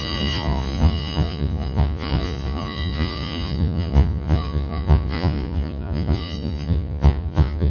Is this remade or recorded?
remade